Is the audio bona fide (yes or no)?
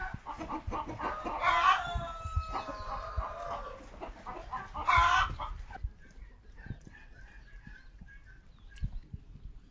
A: yes